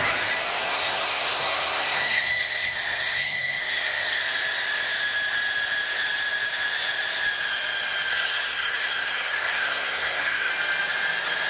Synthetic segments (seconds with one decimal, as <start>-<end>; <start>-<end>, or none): 0.6-4.2; 8.1-10.5